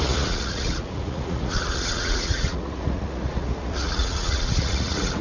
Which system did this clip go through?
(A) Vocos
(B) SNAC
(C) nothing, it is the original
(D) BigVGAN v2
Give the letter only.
A